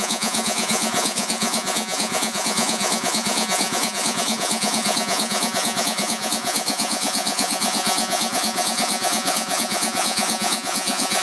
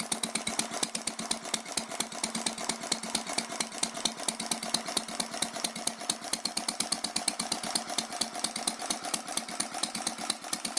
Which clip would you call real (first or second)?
second